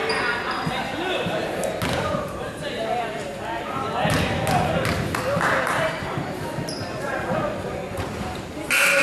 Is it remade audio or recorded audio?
recorded